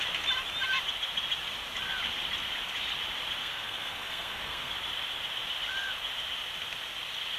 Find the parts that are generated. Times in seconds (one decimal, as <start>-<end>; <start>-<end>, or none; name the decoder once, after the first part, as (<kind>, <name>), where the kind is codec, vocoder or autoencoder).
3.4-4.7 (codec, SNAC)